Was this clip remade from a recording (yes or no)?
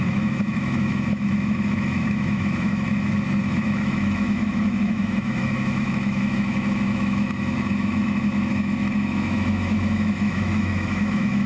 yes